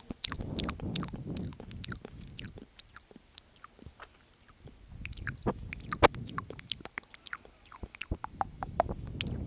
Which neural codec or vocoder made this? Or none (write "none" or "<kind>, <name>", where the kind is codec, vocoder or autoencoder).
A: none